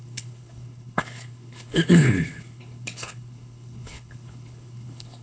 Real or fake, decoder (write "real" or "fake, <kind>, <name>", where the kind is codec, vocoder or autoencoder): fake, codec, HILCodec